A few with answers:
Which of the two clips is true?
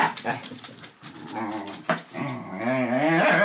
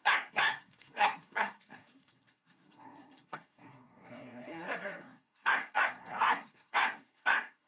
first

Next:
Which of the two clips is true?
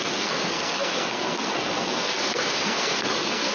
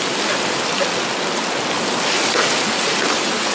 second